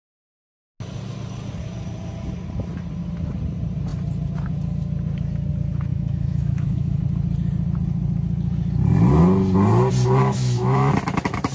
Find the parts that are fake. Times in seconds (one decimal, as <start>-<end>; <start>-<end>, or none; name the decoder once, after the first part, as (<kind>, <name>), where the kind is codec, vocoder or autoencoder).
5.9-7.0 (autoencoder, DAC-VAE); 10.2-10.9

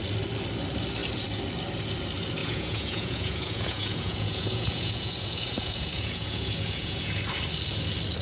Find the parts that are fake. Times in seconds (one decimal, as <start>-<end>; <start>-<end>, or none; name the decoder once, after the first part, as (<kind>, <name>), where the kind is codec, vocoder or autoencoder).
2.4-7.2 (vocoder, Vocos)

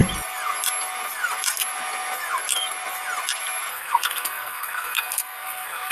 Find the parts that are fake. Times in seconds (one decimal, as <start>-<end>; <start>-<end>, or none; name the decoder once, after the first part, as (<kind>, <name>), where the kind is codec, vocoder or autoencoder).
3.7-5.9 (codec, SNAC)

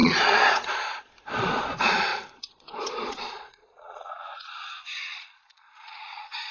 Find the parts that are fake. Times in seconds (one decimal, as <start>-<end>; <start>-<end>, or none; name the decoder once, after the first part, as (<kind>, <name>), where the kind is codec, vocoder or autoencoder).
0.0-6.5 (vocoder, Vocos)